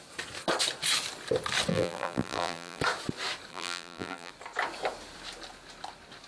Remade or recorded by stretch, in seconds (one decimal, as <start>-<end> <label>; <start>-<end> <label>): 0.0-1.7 recorded; 1.7-2.8 remade; 2.8-3.5 recorded; 3.5-4.3 remade; 4.3-6.3 recorded